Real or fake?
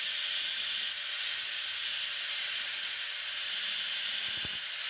real